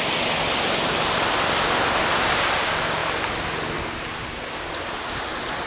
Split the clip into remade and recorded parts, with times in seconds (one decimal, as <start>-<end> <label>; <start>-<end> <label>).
0.0-5.7 recorded